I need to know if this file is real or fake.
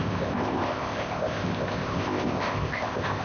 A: fake